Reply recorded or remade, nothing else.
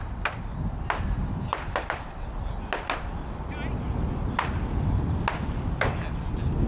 recorded